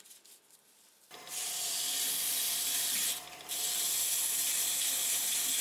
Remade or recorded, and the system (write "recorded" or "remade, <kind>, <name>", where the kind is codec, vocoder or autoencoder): remade, vocoder, BigVGAN v2